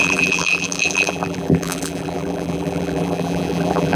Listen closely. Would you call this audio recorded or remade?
remade